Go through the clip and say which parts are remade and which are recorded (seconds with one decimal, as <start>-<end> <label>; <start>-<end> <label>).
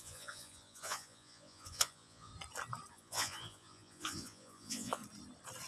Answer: 0.0-2.3 remade; 2.3-2.9 recorded; 2.9-5.0 remade; 5.0-5.7 recorded